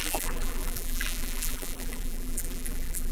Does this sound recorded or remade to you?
remade